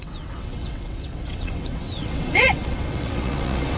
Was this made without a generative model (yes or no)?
no